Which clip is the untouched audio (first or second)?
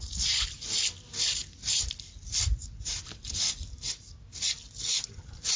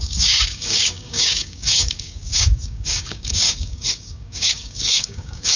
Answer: first